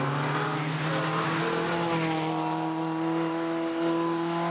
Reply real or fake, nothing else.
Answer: real